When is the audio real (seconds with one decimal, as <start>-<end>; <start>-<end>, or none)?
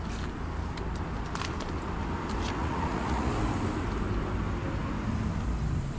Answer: 0.0-2.6; 3.3-6.0